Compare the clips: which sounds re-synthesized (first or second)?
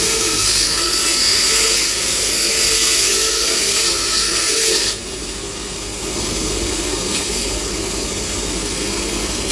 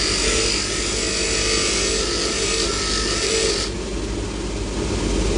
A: first